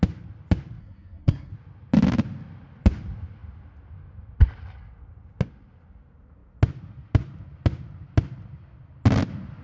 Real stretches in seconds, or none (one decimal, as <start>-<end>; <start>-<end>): 0.0-0.8; 1.5-9.6